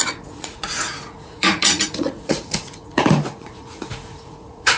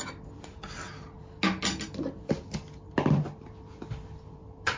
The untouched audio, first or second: second